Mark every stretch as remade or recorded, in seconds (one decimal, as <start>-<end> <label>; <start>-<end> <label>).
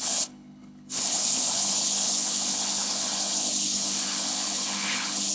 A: 0.0-5.3 remade